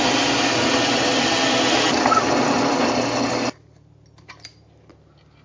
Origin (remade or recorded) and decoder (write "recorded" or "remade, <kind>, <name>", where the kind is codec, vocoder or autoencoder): recorded